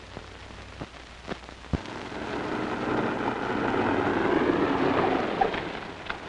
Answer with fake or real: real